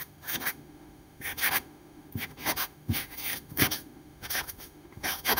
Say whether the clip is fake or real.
fake